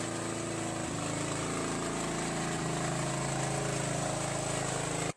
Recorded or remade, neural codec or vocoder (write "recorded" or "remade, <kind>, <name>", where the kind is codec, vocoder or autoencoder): recorded